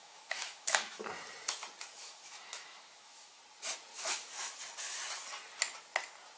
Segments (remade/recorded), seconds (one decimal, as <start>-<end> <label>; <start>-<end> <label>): 0.0-1.0 remade; 1.0-2.0 recorded; 2.0-3.4 remade; 3.4-3.9 recorded; 3.9-4.5 remade; 4.5-6.4 recorded